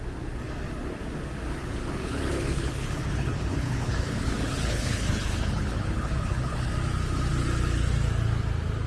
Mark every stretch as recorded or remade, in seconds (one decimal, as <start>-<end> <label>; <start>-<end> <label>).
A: 0.0-1.6 recorded; 1.6-6.7 remade; 6.7-8.9 recorded